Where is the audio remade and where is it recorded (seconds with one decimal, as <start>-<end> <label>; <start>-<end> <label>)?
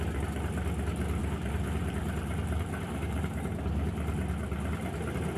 0.0-1.2 recorded; 1.2-3.6 remade; 3.6-5.4 recorded